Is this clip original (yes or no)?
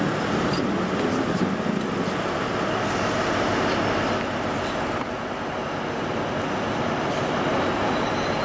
yes